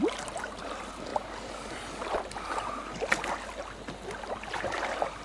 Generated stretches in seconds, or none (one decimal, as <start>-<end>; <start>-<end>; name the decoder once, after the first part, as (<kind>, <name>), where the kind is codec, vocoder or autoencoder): none